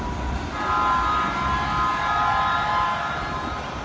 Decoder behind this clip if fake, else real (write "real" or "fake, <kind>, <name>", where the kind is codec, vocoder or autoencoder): real